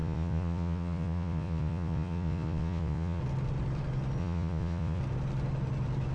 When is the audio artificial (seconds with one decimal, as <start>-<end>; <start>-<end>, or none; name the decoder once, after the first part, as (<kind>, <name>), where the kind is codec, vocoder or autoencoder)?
0.0-3.2 (vocoder, Vocos); 4.2-5.0